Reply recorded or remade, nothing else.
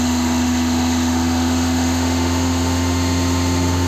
remade